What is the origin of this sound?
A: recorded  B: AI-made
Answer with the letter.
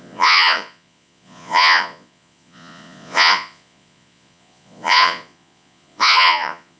B